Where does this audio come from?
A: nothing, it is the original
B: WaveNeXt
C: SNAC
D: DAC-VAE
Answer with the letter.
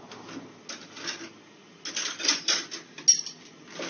A